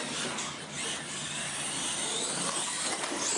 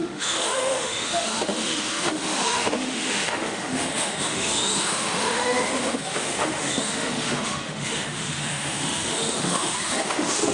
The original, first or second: first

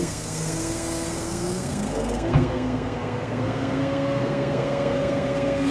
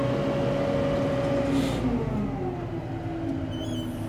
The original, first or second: second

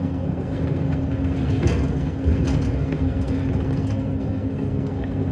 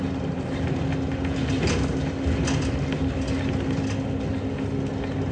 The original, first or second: second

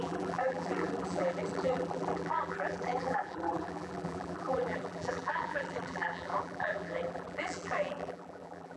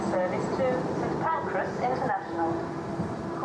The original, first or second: second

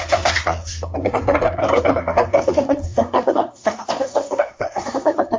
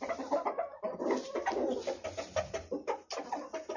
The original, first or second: second